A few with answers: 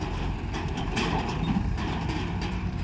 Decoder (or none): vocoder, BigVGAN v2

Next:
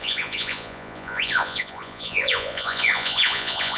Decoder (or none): vocoder, Vocos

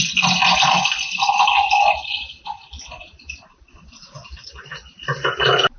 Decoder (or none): none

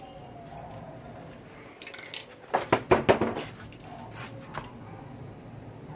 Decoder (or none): none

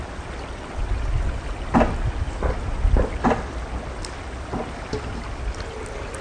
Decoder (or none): none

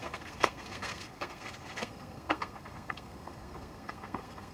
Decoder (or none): codec, SNAC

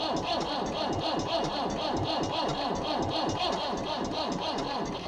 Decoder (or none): none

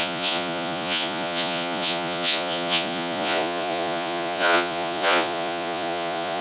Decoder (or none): vocoder, Vocos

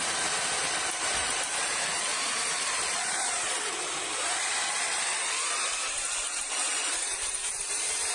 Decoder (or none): vocoder, BigVGAN v2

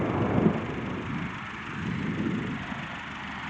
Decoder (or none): none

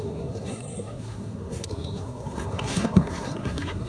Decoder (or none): codec, SNAC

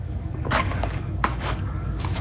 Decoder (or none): codec, DAC